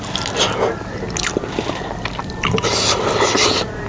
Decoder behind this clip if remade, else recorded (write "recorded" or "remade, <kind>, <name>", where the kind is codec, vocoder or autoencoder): recorded